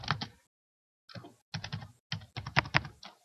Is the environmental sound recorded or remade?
recorded